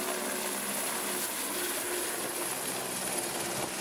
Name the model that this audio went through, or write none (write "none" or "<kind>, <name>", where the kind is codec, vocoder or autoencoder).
none